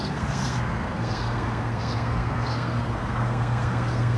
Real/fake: fake